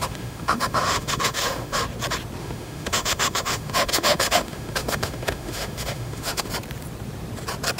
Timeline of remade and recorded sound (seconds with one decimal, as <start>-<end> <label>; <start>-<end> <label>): 0.0-1.8 remade; 1.8-2.4 recorded; 2.4-6.5 remade; 6.5-7.8 recorded